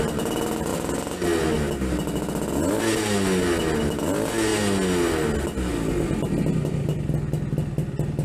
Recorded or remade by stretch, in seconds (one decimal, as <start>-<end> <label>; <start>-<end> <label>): 0.0-8.2 recorded